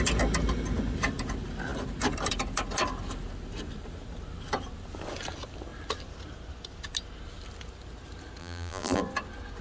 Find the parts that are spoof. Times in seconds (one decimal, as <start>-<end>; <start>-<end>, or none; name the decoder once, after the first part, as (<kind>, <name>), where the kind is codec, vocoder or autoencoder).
8.4-9.0 (vocoder, BigVGAN v2)